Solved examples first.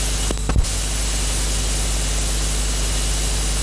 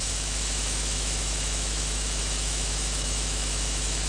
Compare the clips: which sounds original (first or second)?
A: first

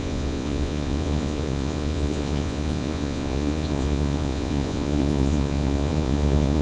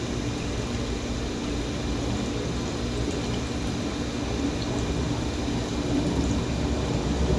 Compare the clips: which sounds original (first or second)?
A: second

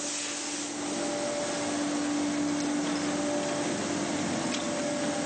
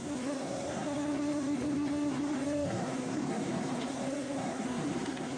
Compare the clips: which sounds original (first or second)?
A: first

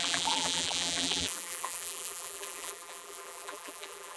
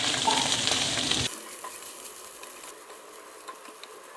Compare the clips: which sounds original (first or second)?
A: second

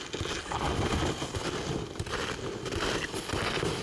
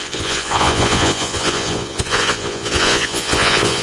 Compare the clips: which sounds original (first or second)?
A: first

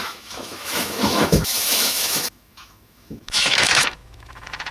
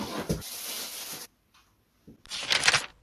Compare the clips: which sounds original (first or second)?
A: second